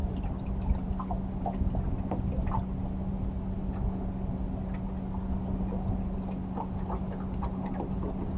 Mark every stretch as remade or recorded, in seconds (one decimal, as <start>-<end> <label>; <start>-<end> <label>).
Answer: 0.0-0.9 remade; 0.9-8.4 recorded